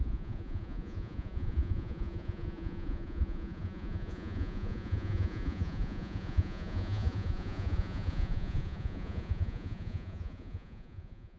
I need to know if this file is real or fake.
fake